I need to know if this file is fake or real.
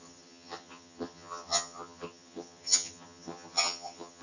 fake